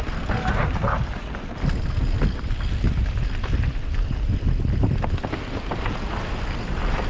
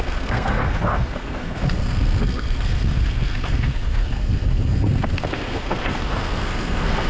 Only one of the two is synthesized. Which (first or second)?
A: second